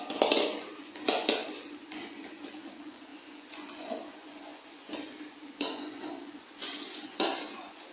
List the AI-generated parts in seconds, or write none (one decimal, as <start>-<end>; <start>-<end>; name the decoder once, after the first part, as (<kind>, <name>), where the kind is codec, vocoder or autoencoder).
0.0-7.9 (vocoder, Vocos)

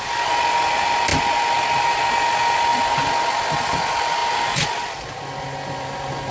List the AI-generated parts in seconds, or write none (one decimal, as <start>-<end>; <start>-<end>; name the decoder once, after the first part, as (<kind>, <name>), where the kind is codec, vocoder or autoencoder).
none